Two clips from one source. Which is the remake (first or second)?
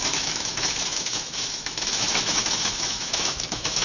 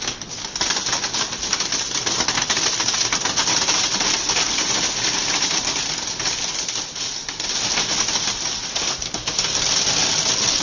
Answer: first